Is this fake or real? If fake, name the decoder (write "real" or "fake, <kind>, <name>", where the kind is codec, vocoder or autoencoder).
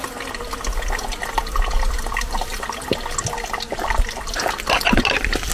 real